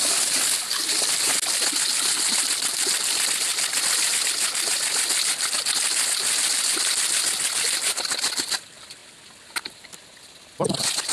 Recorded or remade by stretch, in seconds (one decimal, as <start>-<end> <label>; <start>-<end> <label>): 0.0-11.1 recorded